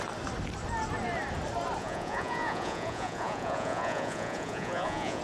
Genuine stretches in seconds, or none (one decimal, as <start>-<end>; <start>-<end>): 0.0-1.8